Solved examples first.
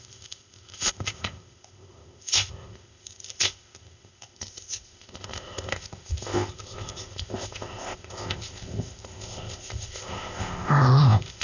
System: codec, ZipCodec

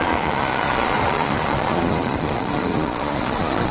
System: vocoder, Vocos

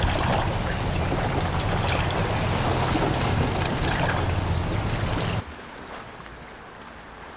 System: none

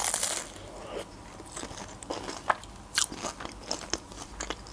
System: none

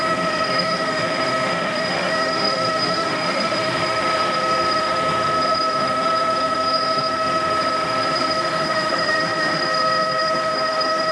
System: autoencoder, DAC-VAE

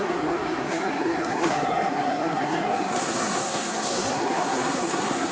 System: codec, SNAC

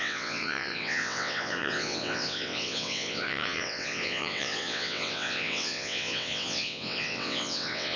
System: vocoder, WaveNeXt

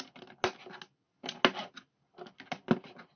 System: none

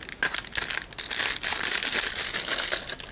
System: none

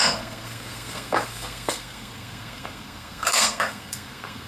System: codec, SNAC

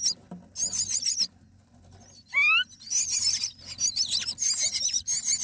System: none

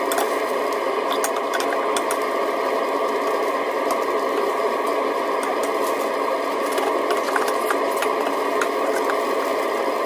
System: none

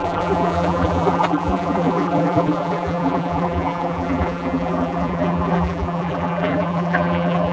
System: vocoder, BigVGAN v2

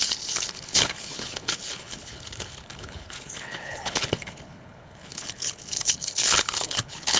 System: codec, HILCodec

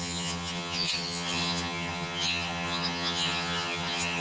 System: vocoder, HiFi-GAN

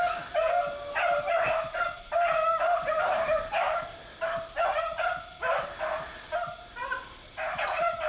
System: none